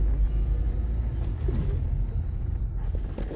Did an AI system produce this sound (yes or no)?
no